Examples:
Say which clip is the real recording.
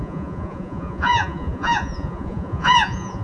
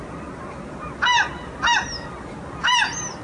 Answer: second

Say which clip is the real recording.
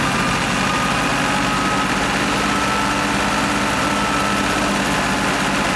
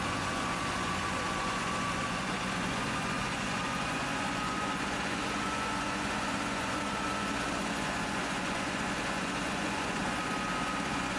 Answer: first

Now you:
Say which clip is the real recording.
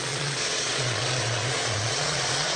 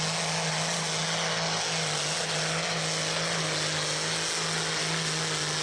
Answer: second